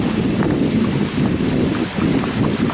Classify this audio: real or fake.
real